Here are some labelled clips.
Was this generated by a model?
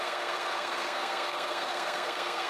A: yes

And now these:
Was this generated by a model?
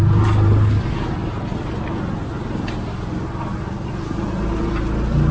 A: no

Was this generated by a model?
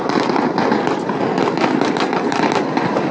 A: no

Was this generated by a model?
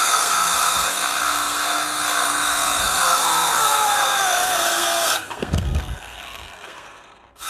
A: yes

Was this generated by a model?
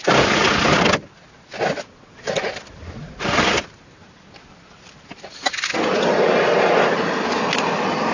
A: no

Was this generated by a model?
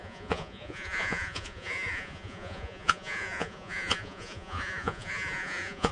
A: yes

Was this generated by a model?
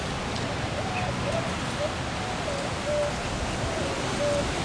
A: no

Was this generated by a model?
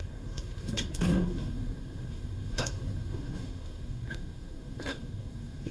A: yes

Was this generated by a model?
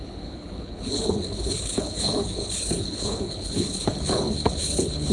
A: yes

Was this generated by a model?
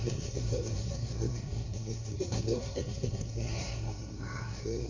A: yes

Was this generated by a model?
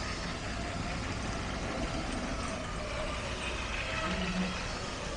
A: no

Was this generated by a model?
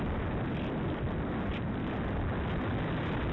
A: no